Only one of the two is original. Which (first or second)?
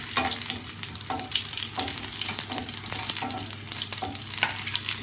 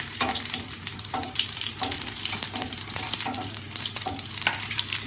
first